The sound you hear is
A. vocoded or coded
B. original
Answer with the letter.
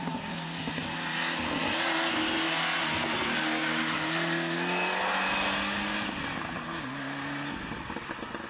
B